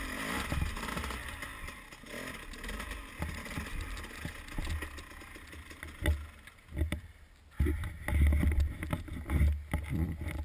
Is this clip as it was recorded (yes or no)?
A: yes